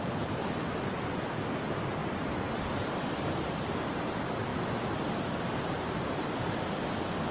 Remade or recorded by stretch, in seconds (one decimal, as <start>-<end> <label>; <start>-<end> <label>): 0.0-7.3 recorded